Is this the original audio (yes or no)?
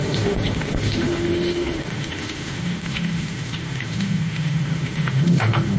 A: no